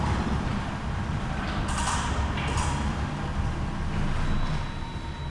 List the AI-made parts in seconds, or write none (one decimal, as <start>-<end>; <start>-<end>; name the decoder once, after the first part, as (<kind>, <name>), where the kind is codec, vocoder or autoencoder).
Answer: none